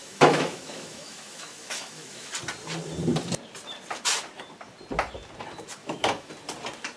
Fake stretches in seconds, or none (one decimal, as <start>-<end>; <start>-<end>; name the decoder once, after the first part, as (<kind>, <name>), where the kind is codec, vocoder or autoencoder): 0.0-2.3 (autoencoder, DAC-VAE); 5.8-6.3